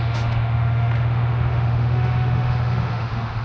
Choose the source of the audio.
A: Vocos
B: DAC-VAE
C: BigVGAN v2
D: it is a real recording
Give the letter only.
B